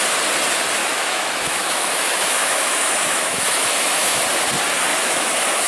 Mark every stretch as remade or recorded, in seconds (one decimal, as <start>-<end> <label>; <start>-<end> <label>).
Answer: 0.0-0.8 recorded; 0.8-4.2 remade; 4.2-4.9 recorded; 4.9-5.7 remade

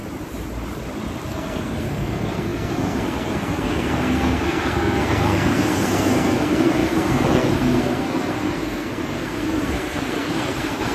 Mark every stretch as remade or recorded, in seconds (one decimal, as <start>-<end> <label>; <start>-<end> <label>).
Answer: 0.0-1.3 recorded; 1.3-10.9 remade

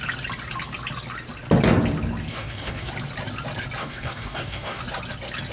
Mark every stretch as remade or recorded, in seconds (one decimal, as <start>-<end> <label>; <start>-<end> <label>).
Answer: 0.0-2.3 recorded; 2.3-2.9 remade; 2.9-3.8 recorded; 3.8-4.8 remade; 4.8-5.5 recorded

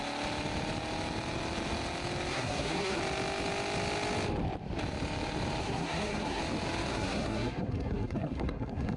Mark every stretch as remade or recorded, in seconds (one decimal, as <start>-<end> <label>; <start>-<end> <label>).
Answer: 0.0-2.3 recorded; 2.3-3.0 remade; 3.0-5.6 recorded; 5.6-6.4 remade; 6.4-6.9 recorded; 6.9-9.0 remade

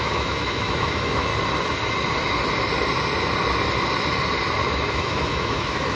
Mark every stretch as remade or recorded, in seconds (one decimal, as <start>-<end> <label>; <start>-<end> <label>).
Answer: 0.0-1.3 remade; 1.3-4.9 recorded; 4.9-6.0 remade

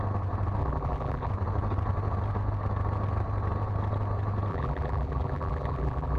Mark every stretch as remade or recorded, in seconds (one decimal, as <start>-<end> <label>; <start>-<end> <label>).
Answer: 0.0-0.6 recorded; 0.6-1.3 remade; 1.3-4.5 recorded; 4.5-6.2 remade

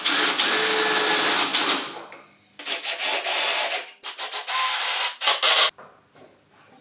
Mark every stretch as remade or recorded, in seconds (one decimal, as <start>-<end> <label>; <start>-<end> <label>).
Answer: 0.0-6.8 recorded

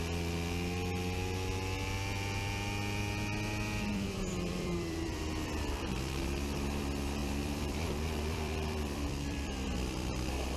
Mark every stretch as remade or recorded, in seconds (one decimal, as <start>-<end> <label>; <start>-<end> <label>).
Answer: 0.0-3.9 recorded; 3.9-6.8 remade; 6.8-7.2 recorded; 7.2-10.6 remade